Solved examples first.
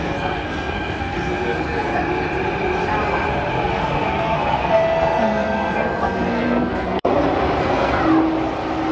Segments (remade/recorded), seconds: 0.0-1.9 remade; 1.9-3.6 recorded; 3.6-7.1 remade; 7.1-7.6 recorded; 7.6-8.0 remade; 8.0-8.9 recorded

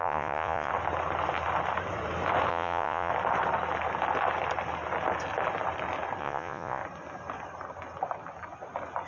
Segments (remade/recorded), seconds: 0.0-0.7 remade; 0.7-2.5 recorded; 2.5-3.1 remade; 3.1-6.2 recorded; 6.2-6.8 remade; 6.8-9.1 recorded

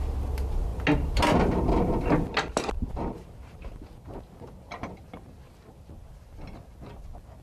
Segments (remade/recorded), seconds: 0.0-7.4 recorded

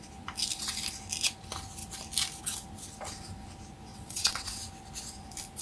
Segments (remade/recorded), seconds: 0.0-3.9 recorded; 3.9-4.7 remade; 4.7-5.6 recorded

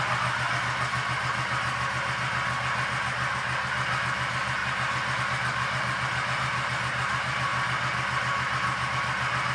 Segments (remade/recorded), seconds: 0.0-4.6 remade; 4.6-5.2 recorded; 5.2-7.5 remade; 7.5-8.9 recorded; 8.9-9.5 remade

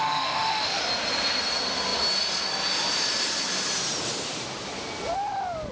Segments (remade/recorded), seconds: 0.0-0.8 remade; 0.8-5.7 recorded

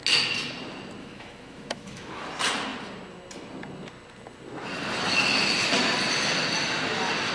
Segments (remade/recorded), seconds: 0.0-1.0 recorded; 1.0-2.3 remade; 2.3-7.3 recorded